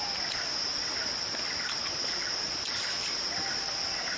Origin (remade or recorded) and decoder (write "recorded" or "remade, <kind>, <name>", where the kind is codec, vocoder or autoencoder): recorded